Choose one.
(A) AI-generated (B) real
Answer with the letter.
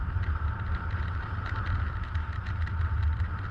B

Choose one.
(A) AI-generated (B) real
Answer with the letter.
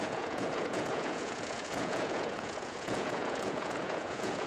A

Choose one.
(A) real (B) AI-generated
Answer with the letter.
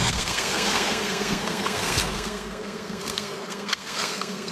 B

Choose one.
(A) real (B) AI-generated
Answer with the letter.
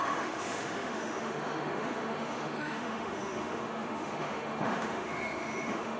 B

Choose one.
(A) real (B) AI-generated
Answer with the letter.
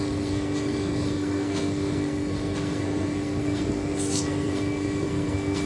B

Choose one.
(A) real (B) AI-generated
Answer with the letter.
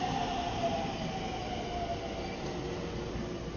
A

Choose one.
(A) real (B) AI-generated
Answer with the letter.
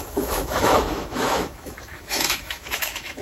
B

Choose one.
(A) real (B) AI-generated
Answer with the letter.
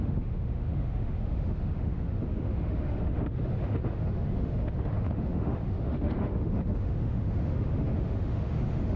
B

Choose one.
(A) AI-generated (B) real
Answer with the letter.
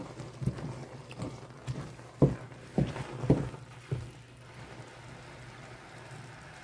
B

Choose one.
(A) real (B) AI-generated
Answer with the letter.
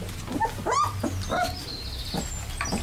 A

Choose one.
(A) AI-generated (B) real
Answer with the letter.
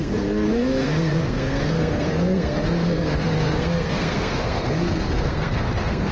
A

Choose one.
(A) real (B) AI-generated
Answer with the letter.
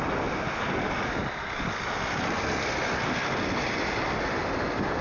A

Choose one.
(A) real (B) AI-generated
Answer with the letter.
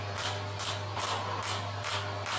A